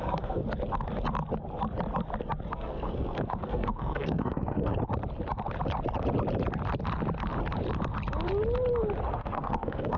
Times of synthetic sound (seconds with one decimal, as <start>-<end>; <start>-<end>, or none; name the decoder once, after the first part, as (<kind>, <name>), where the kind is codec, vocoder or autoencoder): 0.0-0.4 (codec, SNAC); 2.5-4.7; 9.1-10.0